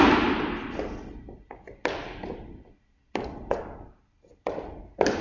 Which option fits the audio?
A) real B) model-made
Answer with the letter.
A